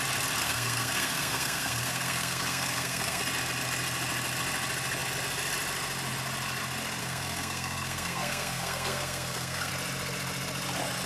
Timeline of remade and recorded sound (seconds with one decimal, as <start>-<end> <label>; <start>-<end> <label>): 0.0-0.4 recorded; 0.4-3.2 remade; 3.2-7.0 recorded; 7.0-9.7 remade; 9.7-11.1 recorded